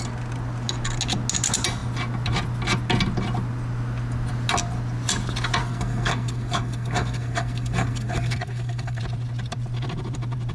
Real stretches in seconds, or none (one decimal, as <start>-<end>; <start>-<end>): 0.0-5.6; 9.0-10.5